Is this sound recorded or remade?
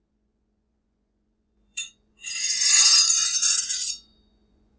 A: remade